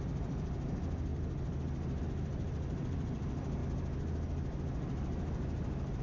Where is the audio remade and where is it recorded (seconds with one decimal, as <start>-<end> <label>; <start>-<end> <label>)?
0.0-1.1 remade; 1.1-2.0 recorded; 2.0-3.6 remade; 3.6-6.0 recorded